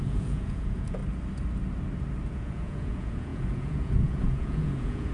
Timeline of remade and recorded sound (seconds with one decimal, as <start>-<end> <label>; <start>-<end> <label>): 0.0-1.0 remade; 1.0-2.3 recorded; 2.3-5.1 remade

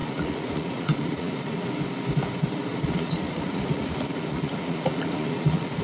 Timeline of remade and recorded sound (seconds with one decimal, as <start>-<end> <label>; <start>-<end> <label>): 0.0-1.7 remade; 1.7-2.7 recorded; 2.7-5.8 remade